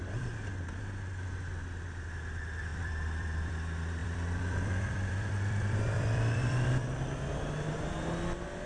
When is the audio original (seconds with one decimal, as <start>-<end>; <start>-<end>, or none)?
0.0-2.7; 3.5-4.0; 7.7-8.7